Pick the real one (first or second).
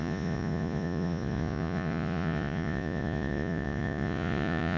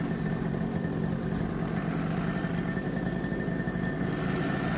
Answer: second